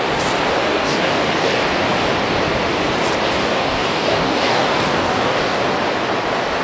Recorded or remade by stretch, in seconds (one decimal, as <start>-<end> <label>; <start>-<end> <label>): 0.0-0.6 recorded; 0.6-1.6 remade; 1.6-3.4 recorded; 3.4-5.6 remade; 5.6-6.6 recorded